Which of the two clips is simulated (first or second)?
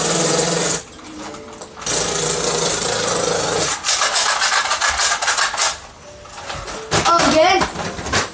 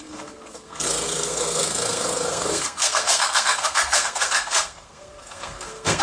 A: second